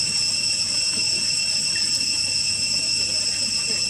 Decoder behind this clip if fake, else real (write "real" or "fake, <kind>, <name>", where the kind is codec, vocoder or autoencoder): real